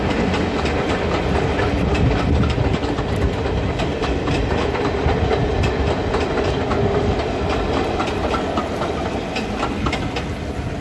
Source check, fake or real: real